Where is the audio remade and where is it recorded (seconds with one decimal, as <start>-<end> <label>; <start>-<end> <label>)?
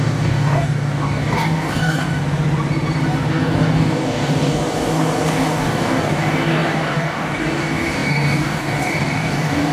0.0-2.1 remade; 2.1-3.3 recorded; 3.3-9.7 remade